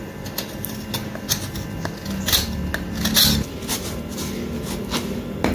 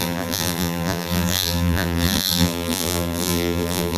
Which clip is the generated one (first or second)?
second